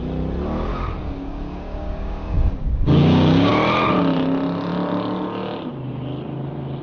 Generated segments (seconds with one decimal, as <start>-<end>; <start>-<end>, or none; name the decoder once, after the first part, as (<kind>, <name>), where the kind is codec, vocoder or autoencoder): 0.7-3.5 (codec, DAC)